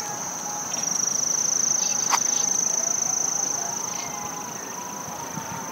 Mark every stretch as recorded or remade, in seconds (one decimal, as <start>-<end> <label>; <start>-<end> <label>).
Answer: 0.0-5.7 recorded